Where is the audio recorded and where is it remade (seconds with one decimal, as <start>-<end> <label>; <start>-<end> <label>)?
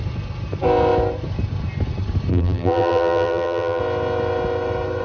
0.0-2.3 recorded; 2.3-3.8 remade; 3.8-5.0 recorded